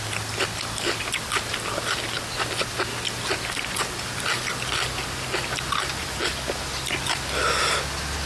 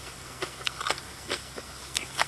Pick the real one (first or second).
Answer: first